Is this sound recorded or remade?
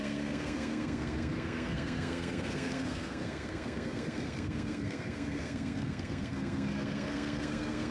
remade